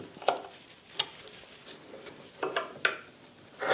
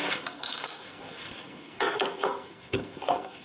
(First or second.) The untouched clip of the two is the first